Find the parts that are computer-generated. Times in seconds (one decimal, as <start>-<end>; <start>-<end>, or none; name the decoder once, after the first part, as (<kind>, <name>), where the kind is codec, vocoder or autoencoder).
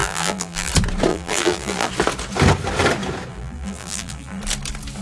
0.0-0.7 (vocoder, BigVGAN v2); 1.1-1.9; 3.3-4.4